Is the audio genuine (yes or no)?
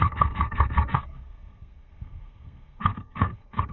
no